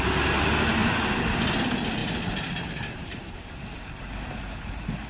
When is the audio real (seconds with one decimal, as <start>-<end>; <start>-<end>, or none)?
0.0-0.8; 1.6-2.0